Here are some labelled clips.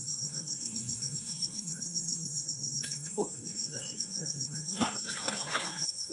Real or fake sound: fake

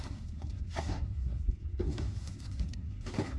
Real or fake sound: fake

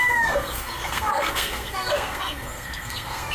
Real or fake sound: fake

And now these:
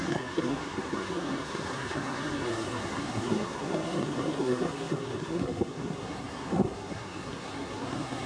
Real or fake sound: fake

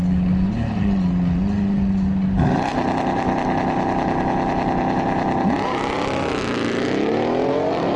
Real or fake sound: real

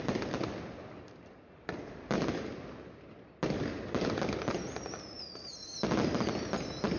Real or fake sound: real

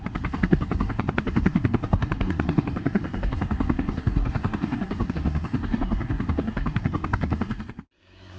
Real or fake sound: fake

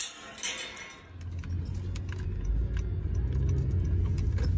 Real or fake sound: real